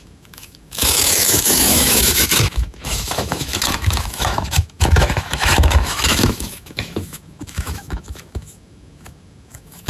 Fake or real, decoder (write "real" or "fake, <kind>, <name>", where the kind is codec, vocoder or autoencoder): fake, autoencoder, DAC-VAE